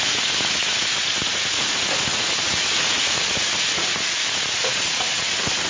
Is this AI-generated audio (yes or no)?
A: yes